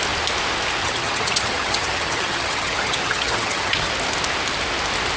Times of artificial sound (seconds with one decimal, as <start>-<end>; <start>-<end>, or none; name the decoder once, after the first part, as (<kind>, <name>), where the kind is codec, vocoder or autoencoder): 0.8-3.9 (vocoder, HiFi-GAN)